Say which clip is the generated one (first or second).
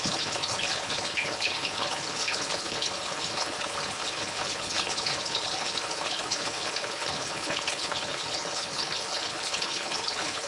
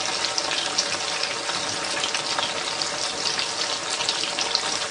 first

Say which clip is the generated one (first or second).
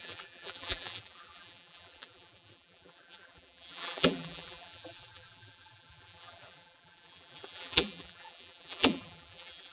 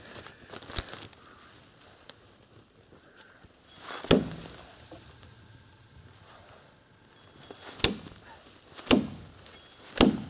first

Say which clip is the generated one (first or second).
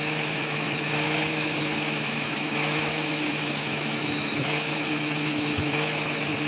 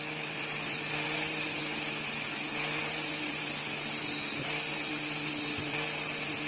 first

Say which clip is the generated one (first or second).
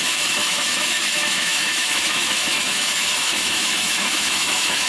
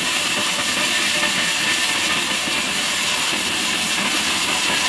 first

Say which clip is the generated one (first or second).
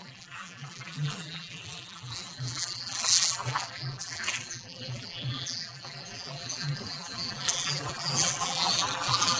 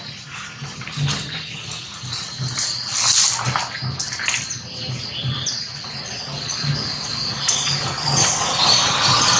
first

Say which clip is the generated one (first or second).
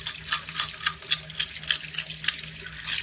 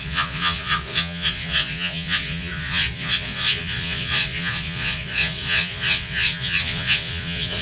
second